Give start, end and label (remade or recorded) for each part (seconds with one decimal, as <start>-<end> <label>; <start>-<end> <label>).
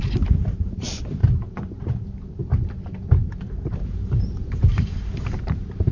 0.0-1.2 remade; 1.2-1.8 recorded; 1.8-2.4 remade; 2.4-3.7 recorded; 3.7-5.9 remade